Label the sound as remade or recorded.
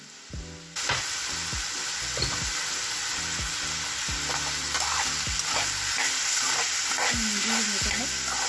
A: recorded